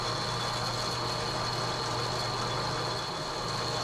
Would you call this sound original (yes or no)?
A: yes